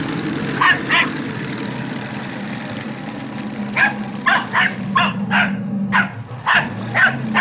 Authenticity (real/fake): real